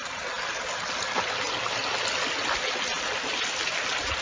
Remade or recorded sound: recorded